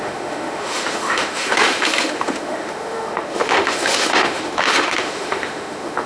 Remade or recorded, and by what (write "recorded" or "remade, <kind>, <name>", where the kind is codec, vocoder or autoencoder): remade, autoencoder, DAC-VAE